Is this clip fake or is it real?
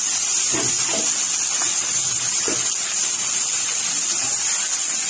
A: real